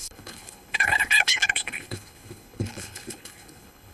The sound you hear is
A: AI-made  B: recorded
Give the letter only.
A